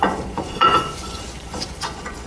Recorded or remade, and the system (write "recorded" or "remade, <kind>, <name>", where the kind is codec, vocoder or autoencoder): remade, vocoder, Vocos